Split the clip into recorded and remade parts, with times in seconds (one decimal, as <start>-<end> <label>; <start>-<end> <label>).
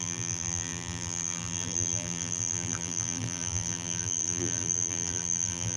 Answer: 0.0-5.8 remade